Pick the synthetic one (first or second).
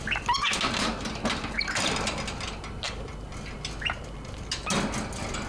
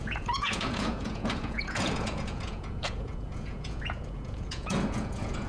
second